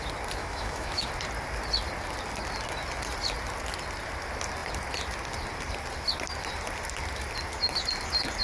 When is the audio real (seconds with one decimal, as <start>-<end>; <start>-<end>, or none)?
0.0-0.4; 1.1-8.4